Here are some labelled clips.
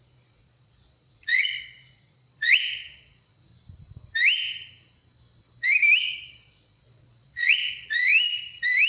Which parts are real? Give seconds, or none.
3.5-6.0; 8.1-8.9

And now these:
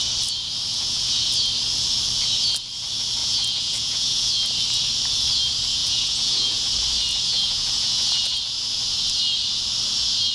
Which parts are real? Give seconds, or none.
0.0-0.7; 1.3-3.2; 4.3-5.8; 6.6-7.3; 8.4-10.3

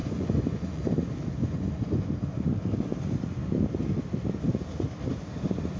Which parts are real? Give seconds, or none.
0.9-1.4; 2.0-5.8

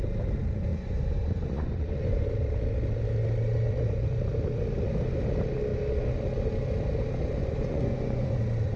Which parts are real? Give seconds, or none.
0.0-0.7; 2.3-7.4; 8.4-8.8